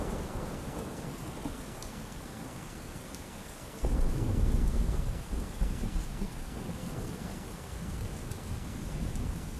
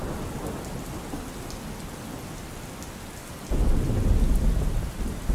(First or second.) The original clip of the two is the second